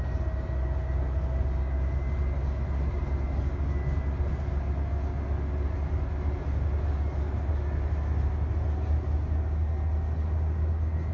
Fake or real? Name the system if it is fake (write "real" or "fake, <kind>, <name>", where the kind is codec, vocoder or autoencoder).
real